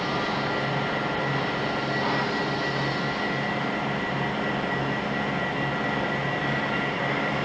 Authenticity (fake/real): real